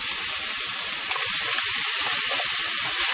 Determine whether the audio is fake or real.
real